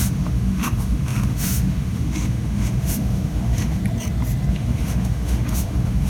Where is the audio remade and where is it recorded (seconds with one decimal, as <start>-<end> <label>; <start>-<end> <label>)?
0.0-3.8 remade; 3.8-4.5 recorded; 4.5-6.1 remade